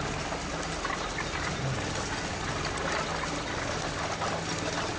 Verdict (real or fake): real